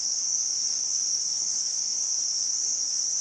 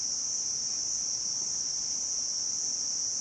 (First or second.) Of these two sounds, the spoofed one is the first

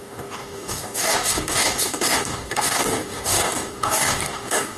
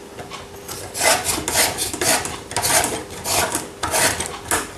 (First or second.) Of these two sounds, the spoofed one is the first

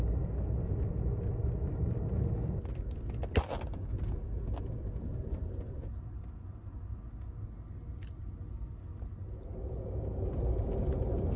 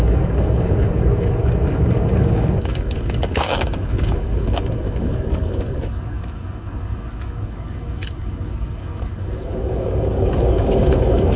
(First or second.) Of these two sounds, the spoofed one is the second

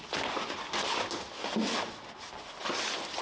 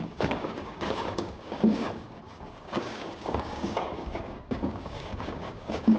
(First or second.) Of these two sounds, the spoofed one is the second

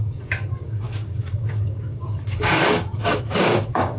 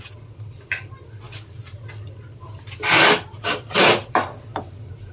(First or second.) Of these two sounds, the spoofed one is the first